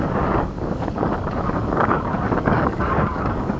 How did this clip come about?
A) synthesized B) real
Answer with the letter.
A